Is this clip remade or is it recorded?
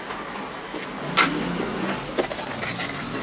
recorded